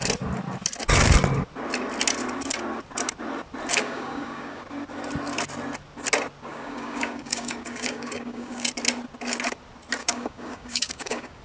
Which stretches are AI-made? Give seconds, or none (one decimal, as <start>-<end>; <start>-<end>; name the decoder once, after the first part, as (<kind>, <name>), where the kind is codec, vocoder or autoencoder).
3.7-4.6 (codec, DAC); 6.5-8.7; 10.0-11.4